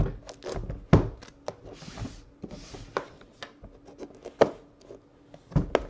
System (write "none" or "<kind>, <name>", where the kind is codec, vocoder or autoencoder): none